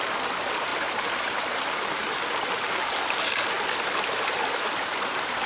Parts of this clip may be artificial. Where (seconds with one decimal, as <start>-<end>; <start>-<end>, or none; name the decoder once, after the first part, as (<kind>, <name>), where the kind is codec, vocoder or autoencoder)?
none